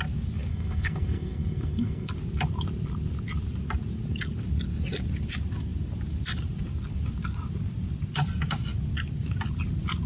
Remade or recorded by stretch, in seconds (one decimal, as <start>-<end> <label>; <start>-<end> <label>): 0.0-0.5 recorded; 0.5-2.1 remade; 2.1-10.1 recorded